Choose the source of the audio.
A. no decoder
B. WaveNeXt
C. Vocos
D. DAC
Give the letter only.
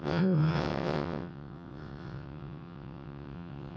B